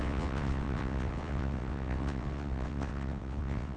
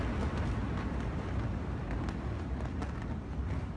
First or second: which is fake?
first